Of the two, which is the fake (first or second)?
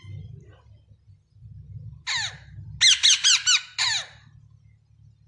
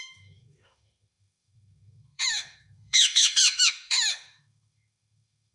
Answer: second